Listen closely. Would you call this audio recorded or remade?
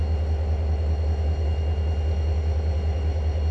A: recorded